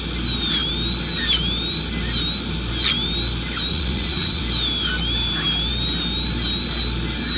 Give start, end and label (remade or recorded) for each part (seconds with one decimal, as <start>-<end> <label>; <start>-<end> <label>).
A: 0.0-3.7 recorded; 3.7-4.4 remade; 4.4-7.4 recorded